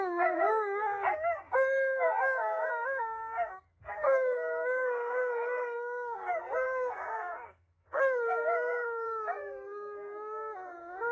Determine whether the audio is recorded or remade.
remade